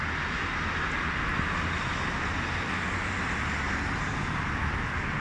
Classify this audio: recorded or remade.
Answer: recorded